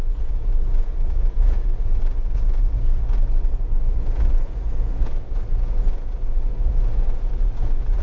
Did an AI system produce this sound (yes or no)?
yes